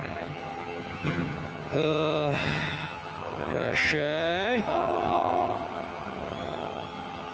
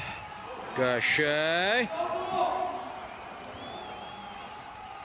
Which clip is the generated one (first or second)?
first